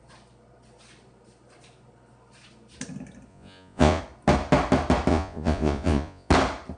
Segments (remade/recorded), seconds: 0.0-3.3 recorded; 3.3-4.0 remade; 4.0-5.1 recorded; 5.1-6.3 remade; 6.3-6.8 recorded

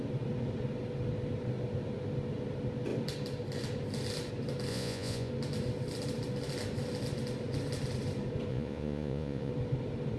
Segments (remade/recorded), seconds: 0.0-4.7 recorded; 4.7-5.3 remade; 5.3-8.5 recorded; 8.5-9.5 remade; 9.5-10.2 recorded